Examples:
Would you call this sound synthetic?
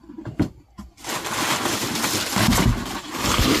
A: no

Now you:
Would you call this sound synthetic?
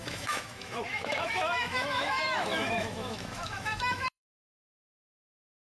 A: yes